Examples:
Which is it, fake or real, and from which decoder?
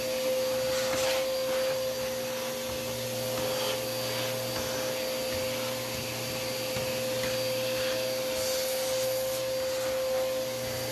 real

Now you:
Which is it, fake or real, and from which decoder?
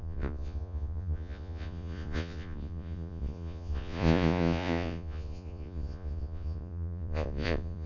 fake, vocoder, Vocos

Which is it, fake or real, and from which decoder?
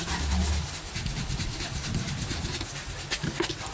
real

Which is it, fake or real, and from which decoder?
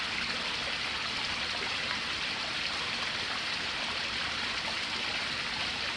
real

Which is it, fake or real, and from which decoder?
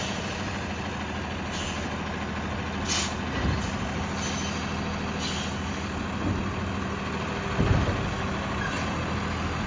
real